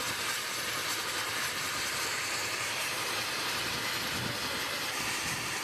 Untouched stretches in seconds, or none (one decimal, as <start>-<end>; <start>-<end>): 0.0-0.8; 3.1-5.6